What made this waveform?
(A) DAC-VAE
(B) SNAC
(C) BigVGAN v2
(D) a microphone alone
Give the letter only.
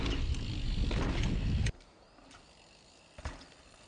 D